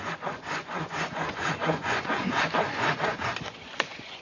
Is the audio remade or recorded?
remade